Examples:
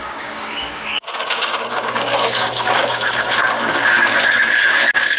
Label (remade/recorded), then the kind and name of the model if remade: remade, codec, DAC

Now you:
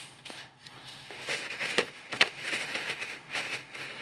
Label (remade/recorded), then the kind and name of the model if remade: remade, autoencoder, DAC-VAE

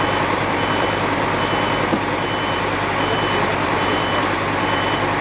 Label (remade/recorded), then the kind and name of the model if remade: remade, vocoder, BigVGAN v2